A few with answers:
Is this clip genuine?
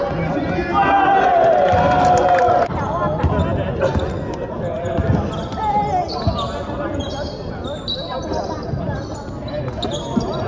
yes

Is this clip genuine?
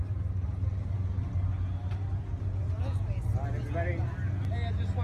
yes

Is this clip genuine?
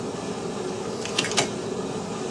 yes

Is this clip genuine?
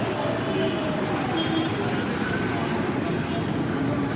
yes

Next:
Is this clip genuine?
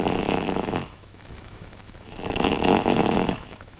no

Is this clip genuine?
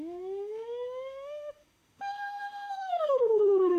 no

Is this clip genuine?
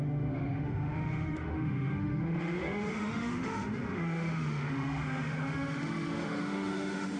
no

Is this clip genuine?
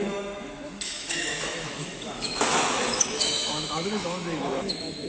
no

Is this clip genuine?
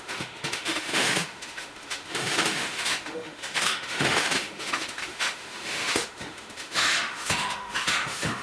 no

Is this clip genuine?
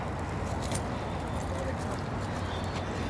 yes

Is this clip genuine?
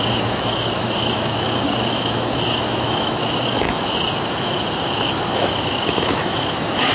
no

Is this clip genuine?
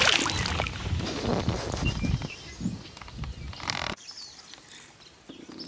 yes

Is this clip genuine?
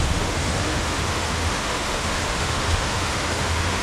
no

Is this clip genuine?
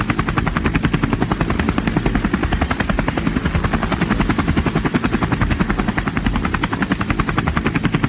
yes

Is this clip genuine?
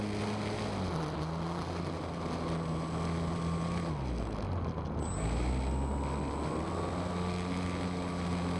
yes